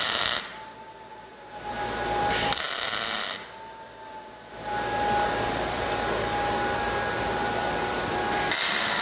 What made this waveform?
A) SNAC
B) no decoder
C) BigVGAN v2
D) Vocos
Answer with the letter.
B